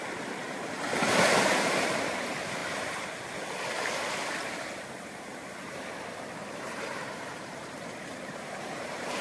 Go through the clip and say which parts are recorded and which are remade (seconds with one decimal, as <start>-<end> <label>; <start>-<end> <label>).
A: 0.0-2.6 remade; 2.6-6.2 recorded; 6.2-9.2 remade